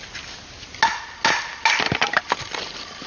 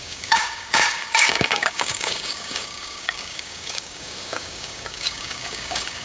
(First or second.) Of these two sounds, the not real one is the second